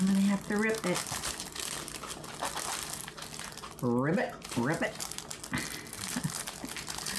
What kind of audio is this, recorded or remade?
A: recorded